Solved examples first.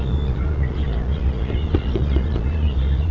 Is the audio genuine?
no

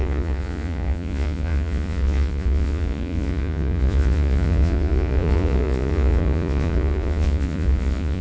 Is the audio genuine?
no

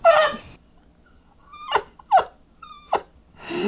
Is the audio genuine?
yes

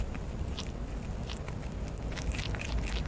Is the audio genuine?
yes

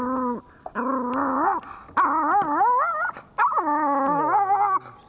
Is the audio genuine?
yes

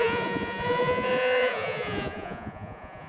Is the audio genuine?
no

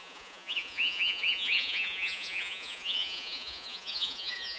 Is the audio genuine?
no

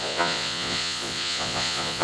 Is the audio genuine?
no